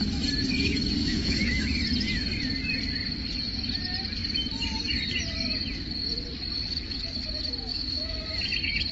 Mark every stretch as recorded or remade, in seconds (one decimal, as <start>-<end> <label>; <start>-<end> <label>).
0.0-1.0 recorded; 1.0-1.6 remade; 1.6-7.7 recorded; 7.7-8.2 remade; 8.2-8.9 recorded